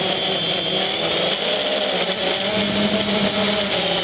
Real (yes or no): yes